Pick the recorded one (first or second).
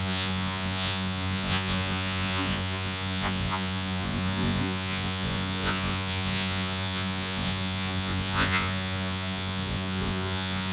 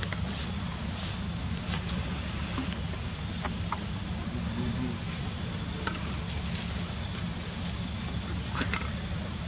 second